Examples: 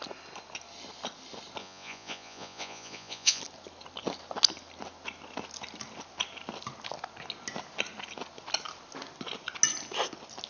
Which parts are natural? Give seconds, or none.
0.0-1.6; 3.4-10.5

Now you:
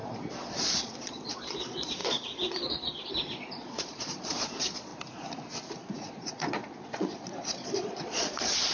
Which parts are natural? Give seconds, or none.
0.0-0.6; 4.9-5.8

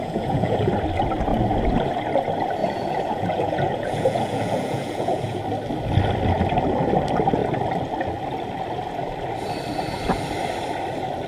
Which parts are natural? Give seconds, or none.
0.7-2.6; 5.4-11.3

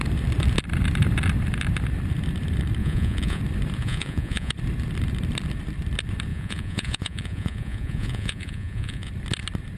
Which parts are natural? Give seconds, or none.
0.0-2.8; 3.4-3.8; 4.5-6.3; 9.1-9.8

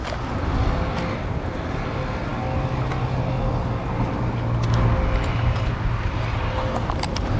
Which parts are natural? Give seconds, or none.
0.0-7.4